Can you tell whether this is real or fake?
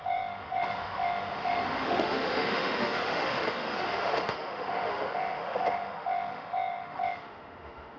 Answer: fake